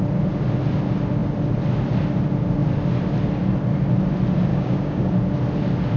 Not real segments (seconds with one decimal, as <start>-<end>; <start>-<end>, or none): 4.5-5.1